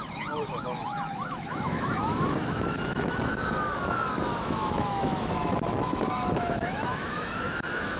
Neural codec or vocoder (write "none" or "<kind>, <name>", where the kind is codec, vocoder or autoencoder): autoencoder, DAC-VAE